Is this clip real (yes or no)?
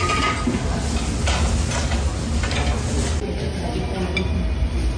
yes